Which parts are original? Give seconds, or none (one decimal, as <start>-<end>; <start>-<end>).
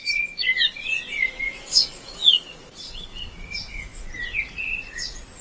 0.5-1.2